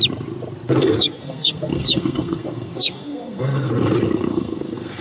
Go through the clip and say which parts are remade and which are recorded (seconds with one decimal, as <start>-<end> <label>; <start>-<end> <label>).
0.0-0.8 recorded; 0.8-3.7 remade; 3.7-4.3 recorded; 4.3-5.0 remade